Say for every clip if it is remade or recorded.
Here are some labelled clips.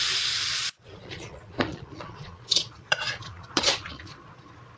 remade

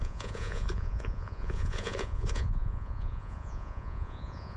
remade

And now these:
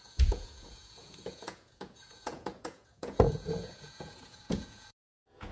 remade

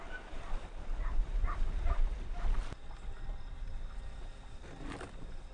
recorded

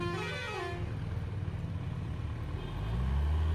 recorded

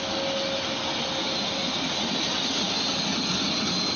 recorded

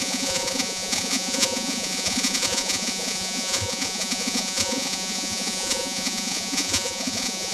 remade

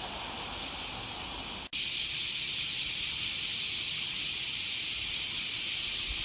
recorded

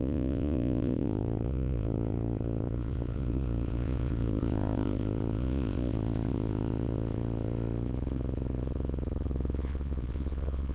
remade